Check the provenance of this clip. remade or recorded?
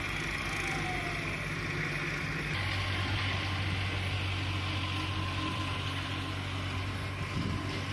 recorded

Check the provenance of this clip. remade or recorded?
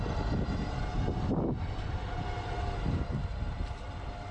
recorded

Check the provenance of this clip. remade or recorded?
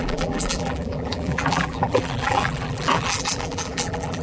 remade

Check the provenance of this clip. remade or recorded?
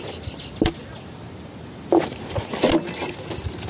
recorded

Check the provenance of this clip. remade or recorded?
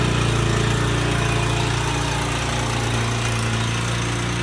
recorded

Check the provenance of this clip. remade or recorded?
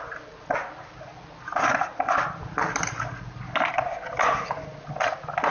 recorded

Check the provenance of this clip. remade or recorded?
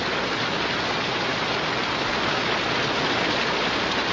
recorded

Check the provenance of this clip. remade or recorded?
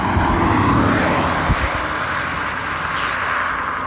recorded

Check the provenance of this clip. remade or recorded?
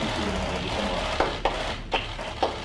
recorded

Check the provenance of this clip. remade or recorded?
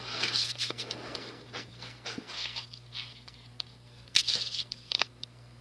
remade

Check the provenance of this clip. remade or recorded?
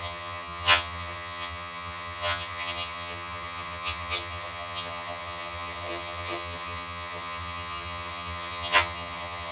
remade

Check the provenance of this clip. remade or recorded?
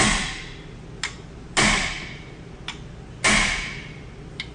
recorded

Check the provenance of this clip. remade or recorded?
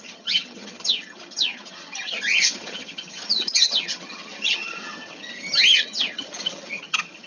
remade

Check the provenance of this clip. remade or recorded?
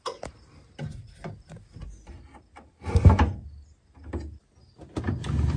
recorded